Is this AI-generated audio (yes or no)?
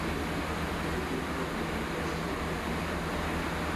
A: no